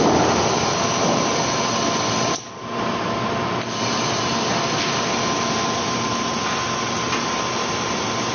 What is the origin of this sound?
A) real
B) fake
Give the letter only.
A